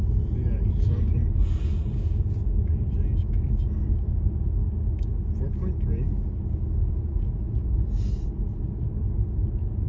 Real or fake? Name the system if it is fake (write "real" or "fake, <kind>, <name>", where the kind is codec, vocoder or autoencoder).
real